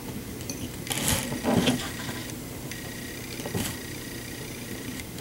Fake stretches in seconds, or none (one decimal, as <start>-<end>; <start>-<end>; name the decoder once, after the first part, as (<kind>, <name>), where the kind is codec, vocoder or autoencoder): 2.2-3.1 (vocoder, BigVGAN v2); 3.8-5.2

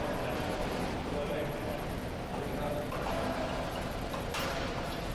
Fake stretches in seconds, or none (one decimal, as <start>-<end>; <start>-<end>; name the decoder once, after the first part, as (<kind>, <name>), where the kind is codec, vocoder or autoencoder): 0.0-1.5 (vocoder, BigVGAN v2); 4.6-5.1

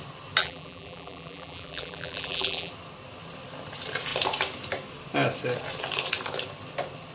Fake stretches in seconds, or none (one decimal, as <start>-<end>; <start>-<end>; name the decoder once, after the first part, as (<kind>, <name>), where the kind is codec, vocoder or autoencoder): 0.4-2.7 (vocoder, BigVGAN v2)

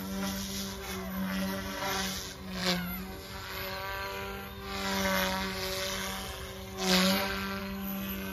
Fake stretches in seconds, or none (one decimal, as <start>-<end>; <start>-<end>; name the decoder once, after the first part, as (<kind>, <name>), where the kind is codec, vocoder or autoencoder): none